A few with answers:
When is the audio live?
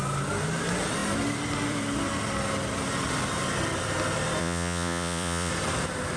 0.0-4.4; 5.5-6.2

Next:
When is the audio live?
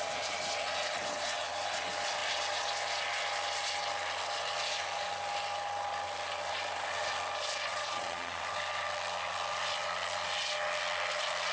0.0-7.7; 8.4-11.5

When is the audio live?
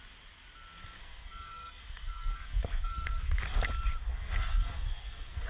0.0-1.0; 3.4-4.1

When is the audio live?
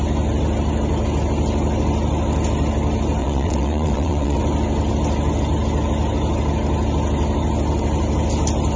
0.0-3.2; 4.4-8.8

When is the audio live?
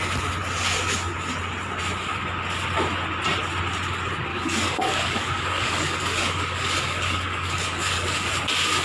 0.0-4.3; 8.3-8.8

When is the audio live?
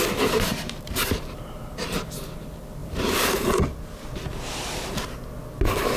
0.0-0.5; 2.2-2.8; 3.6-6.0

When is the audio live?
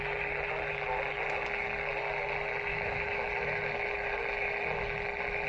0.0-2.7; 3.3-5.5